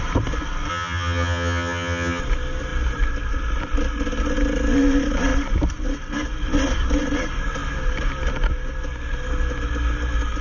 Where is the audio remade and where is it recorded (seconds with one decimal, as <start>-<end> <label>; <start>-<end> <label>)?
0.0-0.7 recorded; 0.7-2.2 remade; 2.2-10.4 recorded